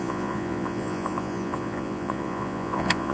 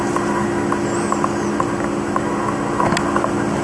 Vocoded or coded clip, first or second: first